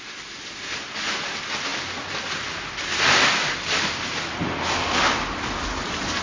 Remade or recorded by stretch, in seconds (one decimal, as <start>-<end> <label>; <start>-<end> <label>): 0.0-6.2 recorded